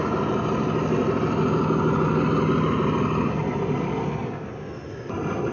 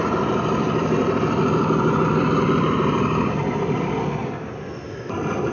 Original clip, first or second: first